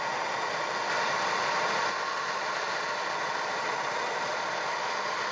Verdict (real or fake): real